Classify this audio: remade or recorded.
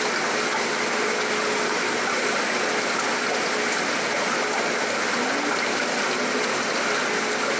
recorded